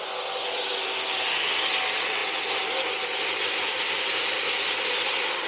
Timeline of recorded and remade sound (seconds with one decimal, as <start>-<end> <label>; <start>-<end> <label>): 0.0-5.5 recorded